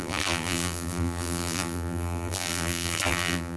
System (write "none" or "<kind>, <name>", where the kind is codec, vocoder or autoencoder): vocoder, BigVGAN v2